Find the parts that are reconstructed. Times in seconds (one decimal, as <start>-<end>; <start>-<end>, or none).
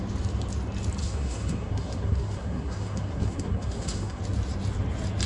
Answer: 1.0-4.2